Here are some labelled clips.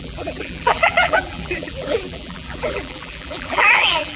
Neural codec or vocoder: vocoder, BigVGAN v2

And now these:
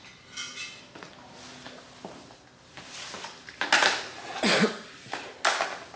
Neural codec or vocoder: none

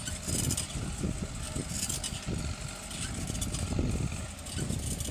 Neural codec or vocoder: none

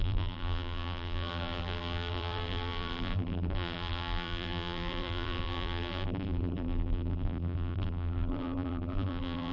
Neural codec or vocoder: vocoder, BigVGAN v2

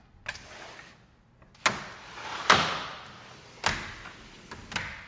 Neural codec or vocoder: none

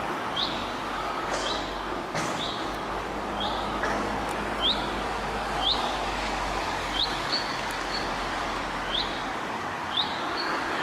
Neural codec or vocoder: codec, DAC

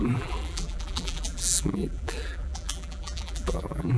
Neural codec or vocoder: vocoder, BigVGAN v2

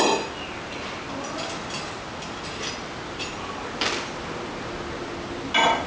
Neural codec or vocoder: none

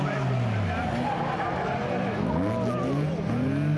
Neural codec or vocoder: none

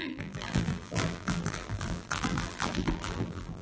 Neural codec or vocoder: vocoder, BigVGAN v2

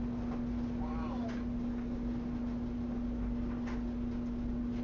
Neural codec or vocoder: none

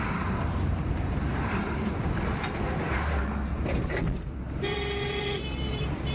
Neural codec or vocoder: vocoder, BigVGAN v2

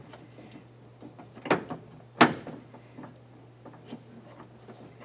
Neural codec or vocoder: none